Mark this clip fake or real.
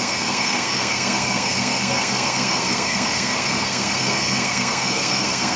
fake